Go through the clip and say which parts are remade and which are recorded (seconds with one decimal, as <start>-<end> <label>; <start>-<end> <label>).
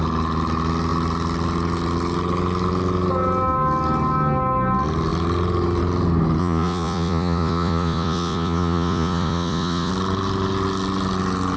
0.0-6.4 recorded; 6.4-9.9 remade; 9.9-11.6 recorded